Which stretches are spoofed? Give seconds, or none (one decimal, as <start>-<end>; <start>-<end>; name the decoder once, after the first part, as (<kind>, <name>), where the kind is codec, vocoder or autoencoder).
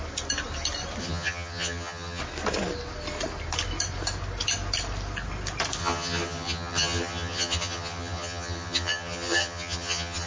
1.0-2.2 (vocoder, HiFi-GAN); 5.8-10.3